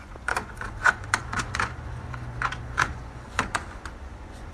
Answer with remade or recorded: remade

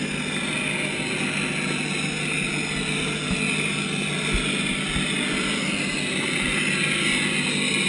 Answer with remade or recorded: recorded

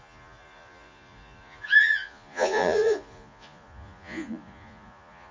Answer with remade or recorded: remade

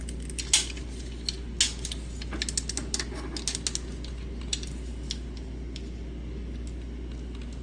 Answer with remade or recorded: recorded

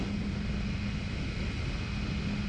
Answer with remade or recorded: recorded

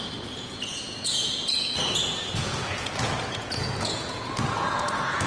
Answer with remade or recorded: remade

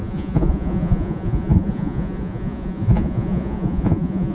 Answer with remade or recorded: remade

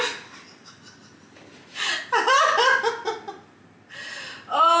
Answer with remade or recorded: recorded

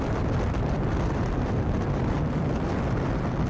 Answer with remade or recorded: recorded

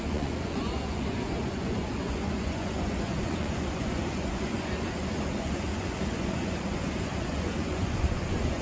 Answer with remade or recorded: remade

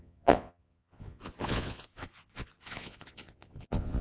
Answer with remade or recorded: remade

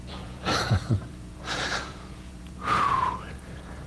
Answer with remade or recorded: remade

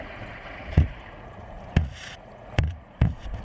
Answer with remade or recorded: remade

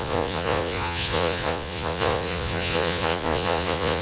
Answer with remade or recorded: remade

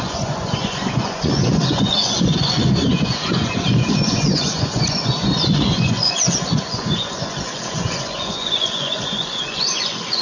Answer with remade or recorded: remade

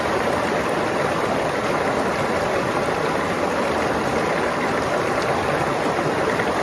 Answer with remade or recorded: recorded